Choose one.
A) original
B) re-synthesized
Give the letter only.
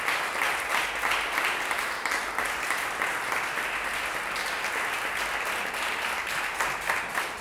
A